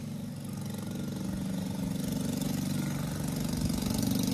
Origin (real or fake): real